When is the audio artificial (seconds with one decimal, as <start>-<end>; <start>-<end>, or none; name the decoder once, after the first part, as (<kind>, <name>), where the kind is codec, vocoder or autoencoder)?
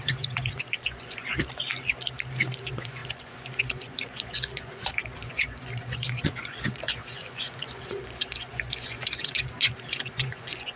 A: 0.0-1.3 (vocoder, Vocos); 2.6-10.8